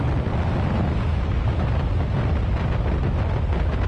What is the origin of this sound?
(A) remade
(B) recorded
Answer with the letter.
B